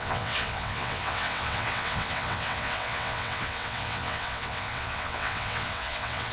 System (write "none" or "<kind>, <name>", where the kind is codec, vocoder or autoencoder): vocoder, WaveNeXt